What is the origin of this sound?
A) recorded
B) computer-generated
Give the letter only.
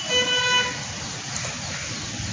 A